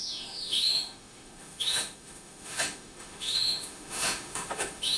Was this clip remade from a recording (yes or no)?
yes